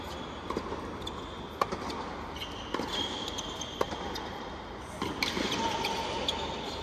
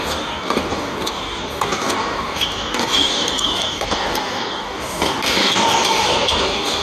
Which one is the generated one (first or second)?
second